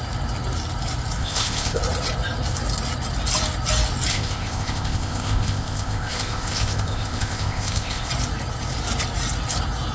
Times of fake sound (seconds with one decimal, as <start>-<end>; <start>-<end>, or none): 1.2-1.8; 4.1-8.1